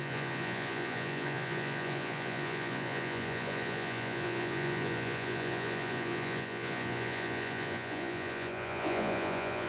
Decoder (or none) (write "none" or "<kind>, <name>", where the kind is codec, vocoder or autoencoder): vocoder, Vocos